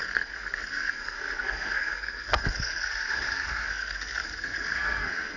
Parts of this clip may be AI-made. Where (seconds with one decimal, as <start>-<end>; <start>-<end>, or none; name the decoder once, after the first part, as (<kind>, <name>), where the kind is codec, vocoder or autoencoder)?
0.0-5.4 (codec, SNAC)